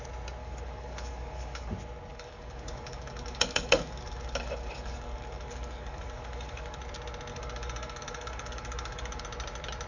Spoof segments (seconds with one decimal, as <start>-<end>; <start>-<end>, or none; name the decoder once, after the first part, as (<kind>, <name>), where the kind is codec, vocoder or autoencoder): 0.4-1.7 (codec, DAC); 2.1-6.8; 7.3-9.2